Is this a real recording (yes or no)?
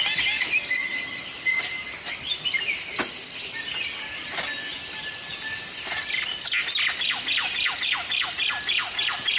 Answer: yes